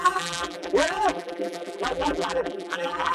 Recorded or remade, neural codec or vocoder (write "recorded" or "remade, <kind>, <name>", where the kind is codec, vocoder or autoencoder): remade, vocoder, BigVGAN v2